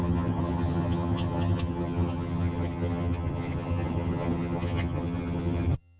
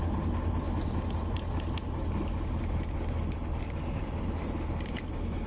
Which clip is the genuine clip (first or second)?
second